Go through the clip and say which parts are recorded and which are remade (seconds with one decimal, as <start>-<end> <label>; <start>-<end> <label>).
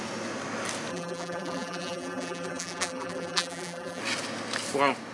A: 0.0-0.9 recorded; 0.9-4.0 remade; 4.0-5.1 recorded